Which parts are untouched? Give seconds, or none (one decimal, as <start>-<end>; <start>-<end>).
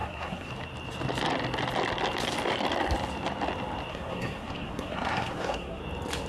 0.5-3.9; 5.8-6.3